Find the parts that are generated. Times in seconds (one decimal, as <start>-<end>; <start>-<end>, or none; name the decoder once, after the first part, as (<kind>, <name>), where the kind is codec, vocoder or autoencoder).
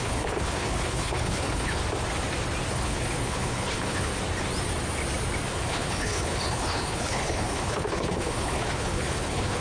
0.0-1.8 (codec, HILCodec); 2.7-4.1; 5.5-9.6